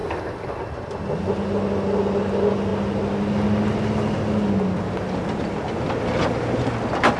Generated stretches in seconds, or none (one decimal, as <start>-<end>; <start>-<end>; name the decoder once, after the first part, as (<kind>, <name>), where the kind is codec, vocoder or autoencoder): 0.0-0.6 (vocoder, BigVGAN v2)